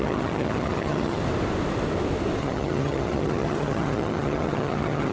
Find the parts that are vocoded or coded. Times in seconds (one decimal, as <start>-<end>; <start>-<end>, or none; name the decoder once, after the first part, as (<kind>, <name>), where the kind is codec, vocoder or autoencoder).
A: 0.0-1.2 (vocoder, HiFi-GAN); 2.4-5.1

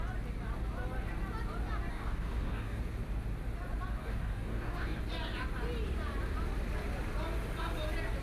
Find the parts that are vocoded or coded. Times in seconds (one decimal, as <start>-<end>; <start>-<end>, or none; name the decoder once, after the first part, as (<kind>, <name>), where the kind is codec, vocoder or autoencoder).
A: 1.9-2.8 (codec, DAC); 4.0-5.0

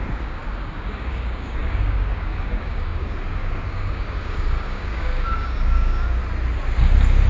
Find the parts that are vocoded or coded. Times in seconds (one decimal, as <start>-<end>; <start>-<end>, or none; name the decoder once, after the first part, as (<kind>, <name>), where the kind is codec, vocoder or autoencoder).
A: 0.0-6.2 (codec, DAC)

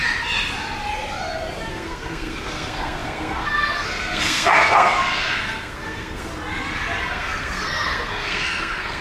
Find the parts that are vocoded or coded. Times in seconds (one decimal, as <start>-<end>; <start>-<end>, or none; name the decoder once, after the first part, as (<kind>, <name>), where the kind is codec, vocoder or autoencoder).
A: 1.7-6.3 (codec, SNAC); 7.0-9.0

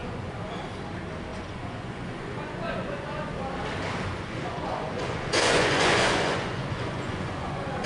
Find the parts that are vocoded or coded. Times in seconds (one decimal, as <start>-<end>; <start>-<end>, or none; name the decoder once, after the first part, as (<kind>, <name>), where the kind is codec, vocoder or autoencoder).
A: 0.0-0.6 (vocoder, Vocos); 1.3-3.3; 4.1-7.9

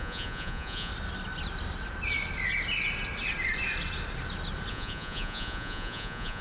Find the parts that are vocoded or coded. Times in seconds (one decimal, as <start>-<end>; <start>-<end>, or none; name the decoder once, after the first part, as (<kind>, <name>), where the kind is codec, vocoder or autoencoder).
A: 0.0-0.9 (vocoder, Vocos); 4.7-6.4

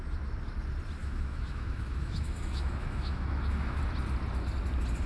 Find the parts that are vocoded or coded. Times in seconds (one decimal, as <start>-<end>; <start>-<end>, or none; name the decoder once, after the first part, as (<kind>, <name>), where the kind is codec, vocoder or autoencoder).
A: 1.0-3.8 (autoencoder, DAC-VAE)